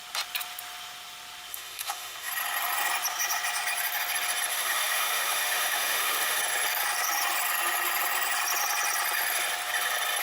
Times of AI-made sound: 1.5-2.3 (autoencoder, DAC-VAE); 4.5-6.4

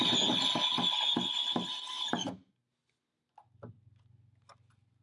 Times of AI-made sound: 0.7-1.3 (vocoder, BigVGAN v2)

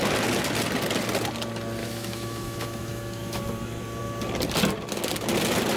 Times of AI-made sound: 1.8-3.4 (autoencoder, DAC-VAE)

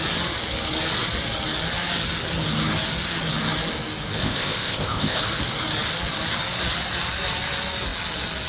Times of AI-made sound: 4.2-5.2 (codec, ZipCodec)

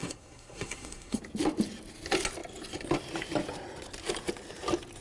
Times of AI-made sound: 0.0-1.2 (codec, SNAC)

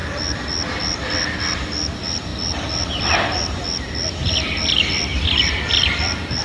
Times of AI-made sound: none

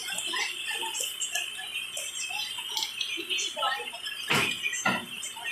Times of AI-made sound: none